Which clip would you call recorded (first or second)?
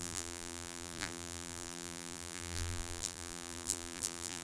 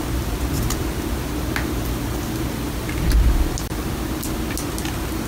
second